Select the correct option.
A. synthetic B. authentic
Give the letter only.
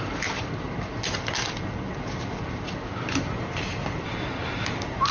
B